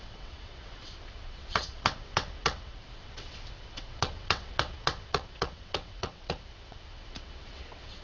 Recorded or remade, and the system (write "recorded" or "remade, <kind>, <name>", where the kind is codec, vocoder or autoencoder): remade, vocoder, WaveNeXt